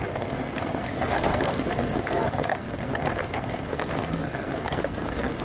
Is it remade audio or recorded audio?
remade